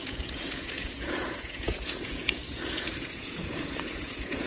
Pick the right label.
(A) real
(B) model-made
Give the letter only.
B